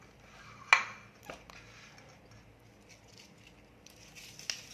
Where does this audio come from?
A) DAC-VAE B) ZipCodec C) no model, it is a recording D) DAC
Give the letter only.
C